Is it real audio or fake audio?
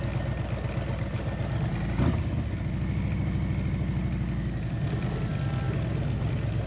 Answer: real